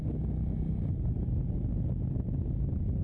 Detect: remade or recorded recorded